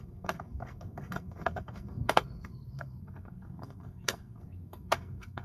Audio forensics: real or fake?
fake